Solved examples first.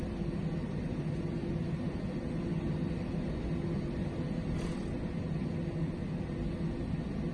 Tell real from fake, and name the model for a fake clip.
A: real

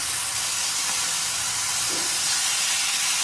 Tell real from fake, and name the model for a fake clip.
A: real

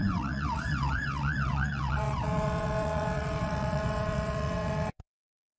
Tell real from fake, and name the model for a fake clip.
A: fake, vocoder, WaveNeXt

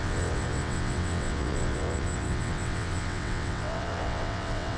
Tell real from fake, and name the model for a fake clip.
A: fake, vocoder, WaveNeXt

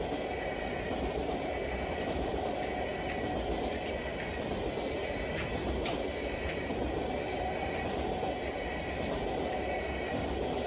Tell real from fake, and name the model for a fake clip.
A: real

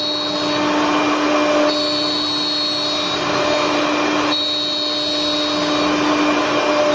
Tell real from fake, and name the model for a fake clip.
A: real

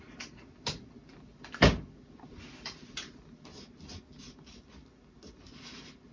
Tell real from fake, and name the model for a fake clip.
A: real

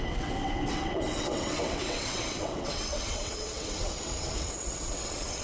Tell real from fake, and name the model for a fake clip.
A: fake, vocoder, WaveNeXt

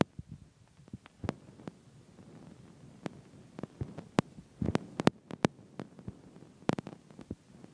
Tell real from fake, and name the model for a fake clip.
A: real